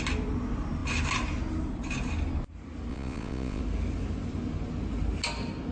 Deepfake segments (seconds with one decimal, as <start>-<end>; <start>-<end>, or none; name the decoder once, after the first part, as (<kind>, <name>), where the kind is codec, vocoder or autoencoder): 2.9-3.6 (vocoder, Vocos)